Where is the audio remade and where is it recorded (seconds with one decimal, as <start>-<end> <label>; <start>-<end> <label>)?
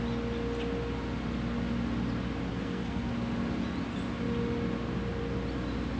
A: 0.0-2.5 recorded; 2.5-3.1 remade; 3.1-6.0 recorded